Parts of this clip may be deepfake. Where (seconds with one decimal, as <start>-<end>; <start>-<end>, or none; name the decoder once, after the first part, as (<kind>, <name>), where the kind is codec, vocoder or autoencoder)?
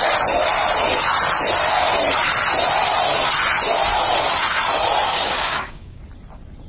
5.1-6.0 (codec, DAC)